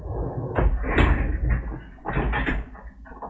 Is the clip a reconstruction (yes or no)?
no